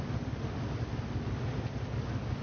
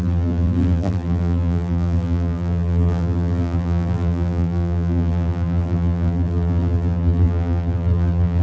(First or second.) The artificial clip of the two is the second